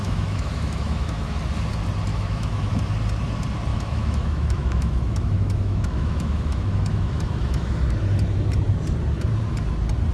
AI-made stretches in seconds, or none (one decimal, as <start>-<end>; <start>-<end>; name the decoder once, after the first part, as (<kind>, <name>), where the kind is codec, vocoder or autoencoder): 0.0-1.4 (autoencoder, DAC-VAE); 2.1-2.8; 3.7-7.9